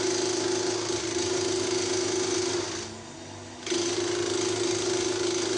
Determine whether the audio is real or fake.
real